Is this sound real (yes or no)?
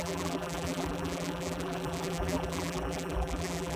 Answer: no